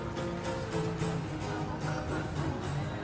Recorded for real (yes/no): yes